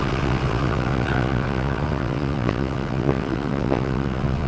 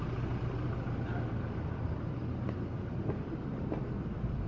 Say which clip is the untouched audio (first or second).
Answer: second